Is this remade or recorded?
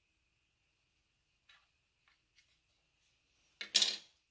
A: recorded